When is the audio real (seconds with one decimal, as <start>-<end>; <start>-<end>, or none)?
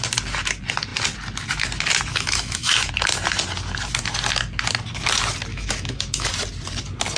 0.0-2.1; 2.9-5.5; 6.3-7.2